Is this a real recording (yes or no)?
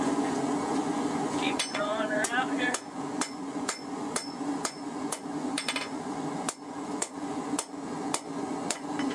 no